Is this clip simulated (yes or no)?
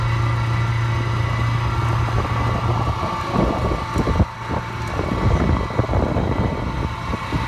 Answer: no